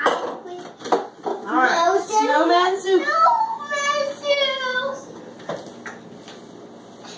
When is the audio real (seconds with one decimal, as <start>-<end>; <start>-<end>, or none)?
0.0-1.3; 2.8-4.7; 5.2-7.2